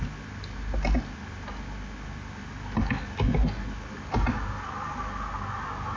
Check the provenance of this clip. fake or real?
real